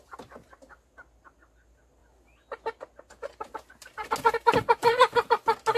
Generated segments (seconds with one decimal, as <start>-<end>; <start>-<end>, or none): none